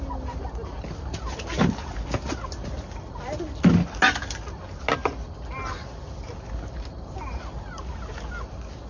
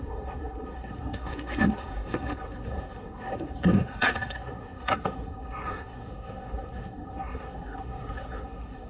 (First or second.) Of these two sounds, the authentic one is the first